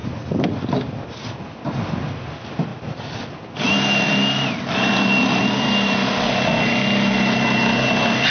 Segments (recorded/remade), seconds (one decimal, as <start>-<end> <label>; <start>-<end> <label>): 0.0-8.3 recorded